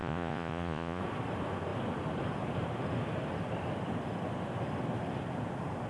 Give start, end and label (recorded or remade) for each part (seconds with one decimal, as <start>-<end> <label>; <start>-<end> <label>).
0.0-1.0 remade; 1.0-5.9 recorded